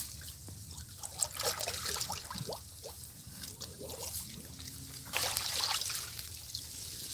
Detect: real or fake real